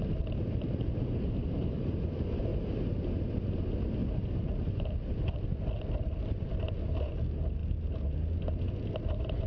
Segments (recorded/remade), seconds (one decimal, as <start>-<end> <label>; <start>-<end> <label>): 0.0-9.5 recorded